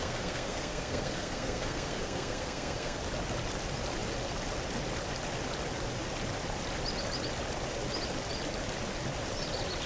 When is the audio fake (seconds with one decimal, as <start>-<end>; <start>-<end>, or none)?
0.0-3.0